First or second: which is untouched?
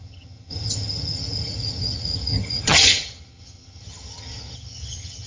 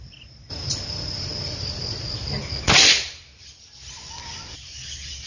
second